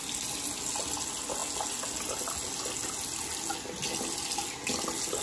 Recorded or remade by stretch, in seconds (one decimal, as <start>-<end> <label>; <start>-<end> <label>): 0.0-5.2 recorded